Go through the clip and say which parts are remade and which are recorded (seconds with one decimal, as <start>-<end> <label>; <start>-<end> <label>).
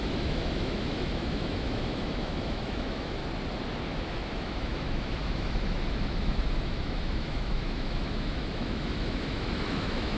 0.0-3.2 remade; 3.2-3.9 recorded; 3.9-10.2 remade